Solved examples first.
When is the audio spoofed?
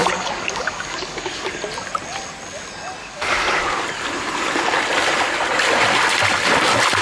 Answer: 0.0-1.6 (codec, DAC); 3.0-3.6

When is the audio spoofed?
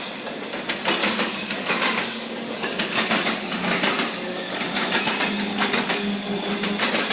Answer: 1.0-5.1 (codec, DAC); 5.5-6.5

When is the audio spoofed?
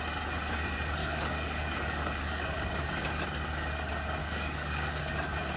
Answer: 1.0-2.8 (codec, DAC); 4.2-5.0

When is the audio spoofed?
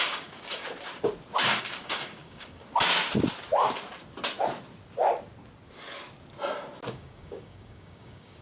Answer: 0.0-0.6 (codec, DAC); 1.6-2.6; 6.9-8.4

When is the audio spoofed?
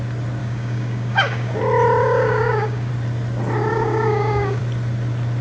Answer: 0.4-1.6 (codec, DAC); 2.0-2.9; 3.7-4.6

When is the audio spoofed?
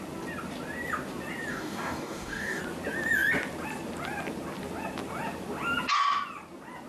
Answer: 1.5-2.6 (codec, DAC)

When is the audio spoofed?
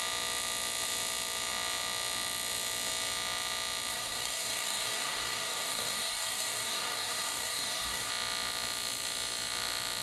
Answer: 3.9-8.1 (codec, DAC)